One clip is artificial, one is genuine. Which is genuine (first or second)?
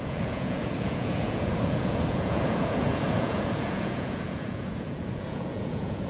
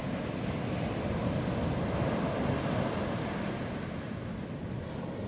second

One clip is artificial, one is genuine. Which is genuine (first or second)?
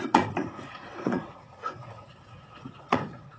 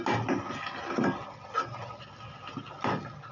second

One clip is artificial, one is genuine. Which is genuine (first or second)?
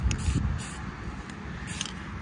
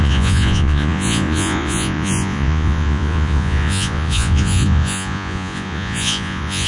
first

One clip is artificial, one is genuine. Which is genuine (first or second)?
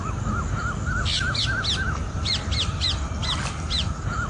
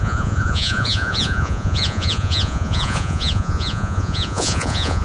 first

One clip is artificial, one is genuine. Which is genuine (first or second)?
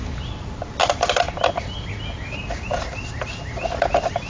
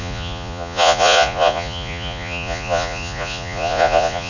first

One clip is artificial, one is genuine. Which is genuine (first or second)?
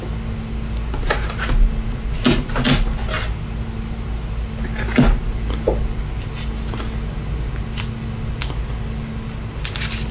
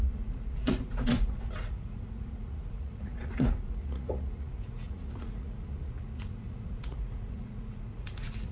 first